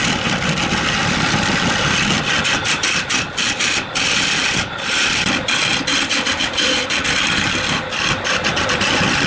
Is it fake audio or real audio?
real